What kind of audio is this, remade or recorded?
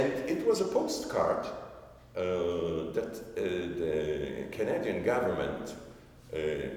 recorded